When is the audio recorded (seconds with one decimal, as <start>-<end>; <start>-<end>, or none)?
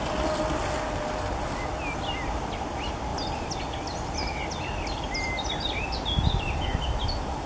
0.0-7.5